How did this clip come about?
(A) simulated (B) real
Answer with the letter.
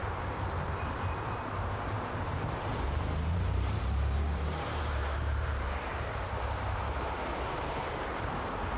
A